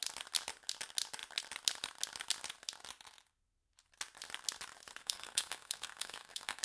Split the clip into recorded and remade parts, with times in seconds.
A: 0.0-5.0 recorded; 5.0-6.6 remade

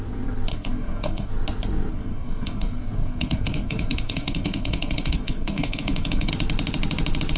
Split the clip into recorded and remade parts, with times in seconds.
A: 0.0-0.5 recorded; 0.5-1.3 remade; 1.3-1.9 recorded; 1.9-6.3 remade; 6.3-7.4 recorded

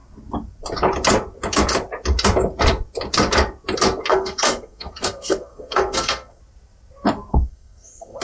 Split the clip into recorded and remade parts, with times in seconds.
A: 0.0-4.1 recorded; 4.1-6.4 remade; 6.4-7.3 recorded; 7.3-8.2 remade

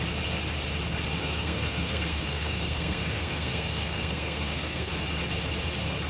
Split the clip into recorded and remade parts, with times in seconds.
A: 0.0-1.2 recorded; 1.2-4.9 remade; 4.9-6.1 recorded

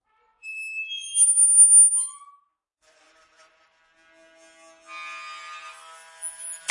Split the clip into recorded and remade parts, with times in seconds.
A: 0.0-6.7 recorded